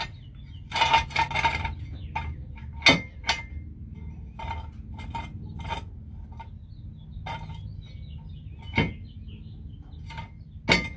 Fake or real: real